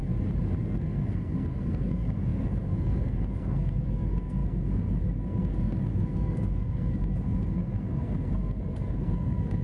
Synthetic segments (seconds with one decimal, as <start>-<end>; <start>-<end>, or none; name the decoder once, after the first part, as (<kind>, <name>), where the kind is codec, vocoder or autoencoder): 0.6-9.6 (codec, SNAC)